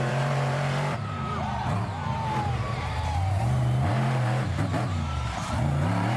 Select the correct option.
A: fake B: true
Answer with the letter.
A